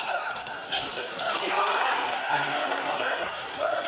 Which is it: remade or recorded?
remade